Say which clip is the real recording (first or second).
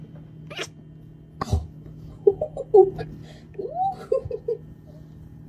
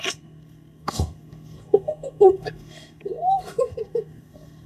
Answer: first